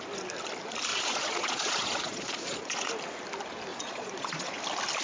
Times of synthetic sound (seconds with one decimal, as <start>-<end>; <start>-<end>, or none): 0.9-2.9; 3.7-4.6